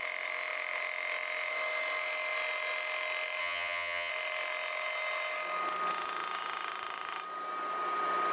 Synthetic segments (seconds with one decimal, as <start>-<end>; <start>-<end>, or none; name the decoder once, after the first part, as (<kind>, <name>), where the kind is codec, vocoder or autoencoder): 3.4-4.1 (vocoder, HiFi-GAN)